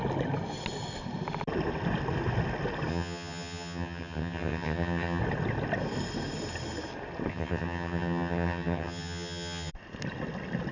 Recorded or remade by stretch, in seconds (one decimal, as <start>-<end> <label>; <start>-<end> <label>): 0.0-2.9 recorded; 2.9-5.2 remade; 5.2-7.3 recorded; 7.3-9.7 remade; 9.7-10.7 recorded